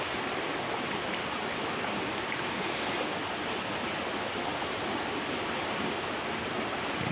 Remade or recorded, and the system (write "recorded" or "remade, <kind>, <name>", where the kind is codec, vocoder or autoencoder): recorded